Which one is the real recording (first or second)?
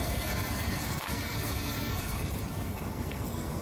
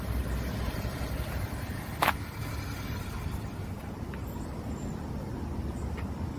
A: second